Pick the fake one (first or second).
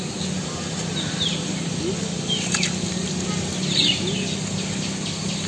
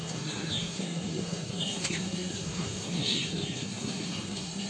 second